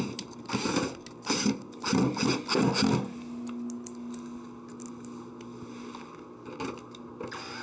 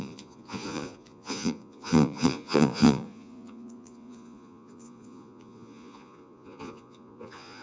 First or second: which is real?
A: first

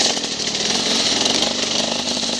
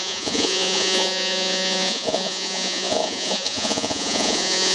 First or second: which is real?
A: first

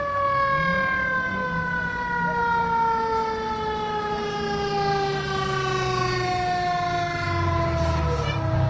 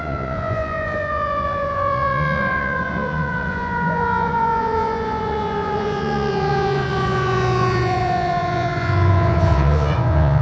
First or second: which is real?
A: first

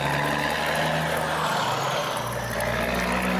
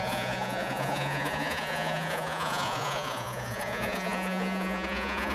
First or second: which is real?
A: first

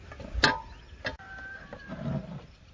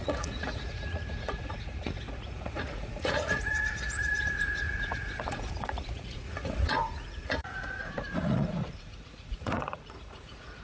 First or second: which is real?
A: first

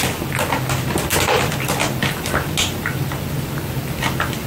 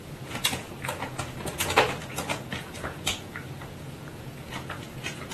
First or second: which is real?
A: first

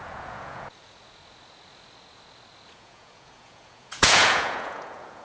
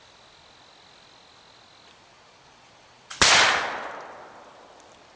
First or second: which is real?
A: second